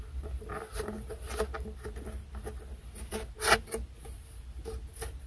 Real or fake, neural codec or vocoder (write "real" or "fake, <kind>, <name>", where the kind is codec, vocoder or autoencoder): real